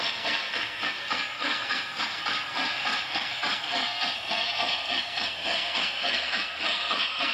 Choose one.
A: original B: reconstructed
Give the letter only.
B